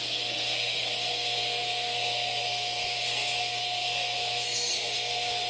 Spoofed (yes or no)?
yes